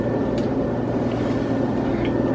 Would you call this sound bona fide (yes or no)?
yes